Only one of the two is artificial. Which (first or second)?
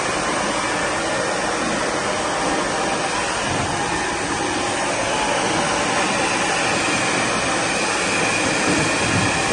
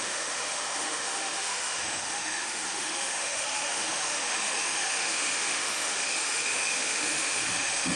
second